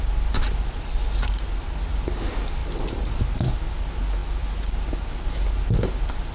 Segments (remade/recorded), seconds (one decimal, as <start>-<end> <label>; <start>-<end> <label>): 0.0-6.3 recorded